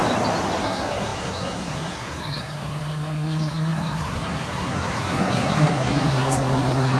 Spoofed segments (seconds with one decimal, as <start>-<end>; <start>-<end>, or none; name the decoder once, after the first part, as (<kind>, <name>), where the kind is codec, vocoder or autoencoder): 0.6-7.0 (codec, SNAC)